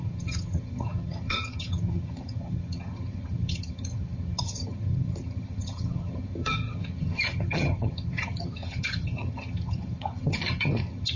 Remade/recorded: remade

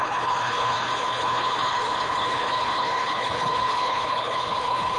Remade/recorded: remade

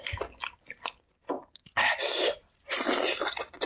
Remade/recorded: recorded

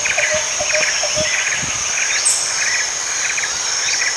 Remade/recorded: recorded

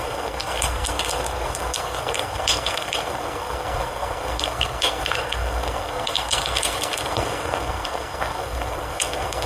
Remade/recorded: remade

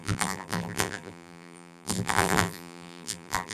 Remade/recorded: remade